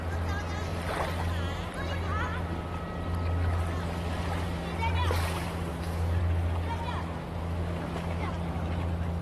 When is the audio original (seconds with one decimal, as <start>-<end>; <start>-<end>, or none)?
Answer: 0.0-5.7; 6.2-7.4; 8.3-9.2